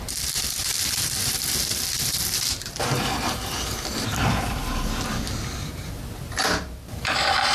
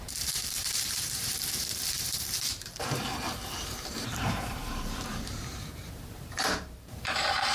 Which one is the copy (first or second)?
second